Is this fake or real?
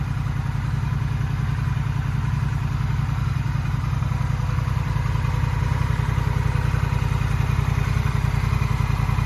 real